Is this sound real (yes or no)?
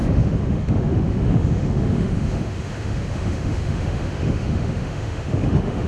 no